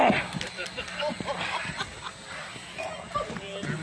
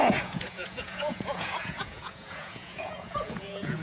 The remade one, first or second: second